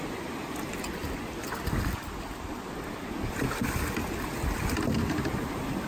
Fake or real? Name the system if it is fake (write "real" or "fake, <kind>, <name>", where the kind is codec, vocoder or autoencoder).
real